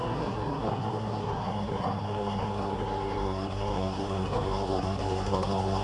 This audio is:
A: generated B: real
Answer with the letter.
A